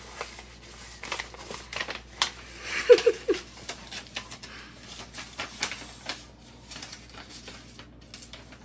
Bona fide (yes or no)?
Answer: yes